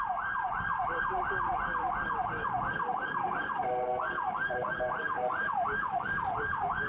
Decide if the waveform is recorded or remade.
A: remade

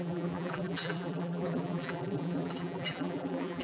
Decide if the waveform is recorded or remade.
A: remade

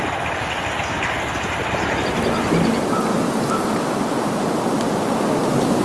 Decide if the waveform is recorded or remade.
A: recorded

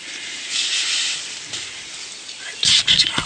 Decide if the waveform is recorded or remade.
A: recorded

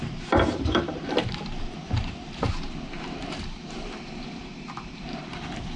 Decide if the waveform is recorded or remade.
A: remade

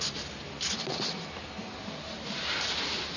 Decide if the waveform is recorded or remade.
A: recorded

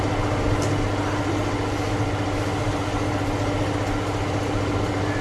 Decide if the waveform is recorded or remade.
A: recorded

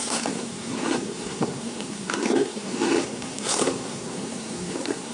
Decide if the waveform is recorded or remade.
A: remade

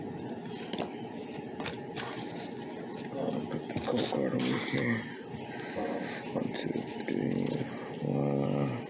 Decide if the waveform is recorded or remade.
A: recorded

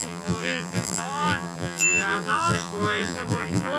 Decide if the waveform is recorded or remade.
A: remade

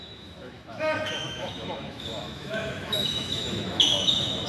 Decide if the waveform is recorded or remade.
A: remade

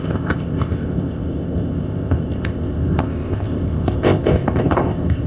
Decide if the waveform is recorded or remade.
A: remade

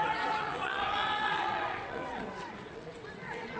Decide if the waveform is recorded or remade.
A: remade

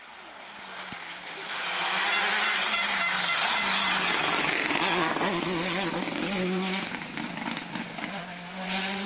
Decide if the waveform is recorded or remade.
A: recorded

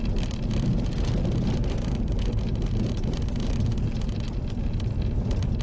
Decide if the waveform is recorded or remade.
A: recorded